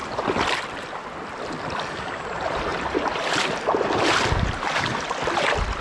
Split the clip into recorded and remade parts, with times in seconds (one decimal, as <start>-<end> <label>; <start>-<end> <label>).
0.0-2.7 recorded; 2.7-4.0 remade; 4.0-5.8 recorded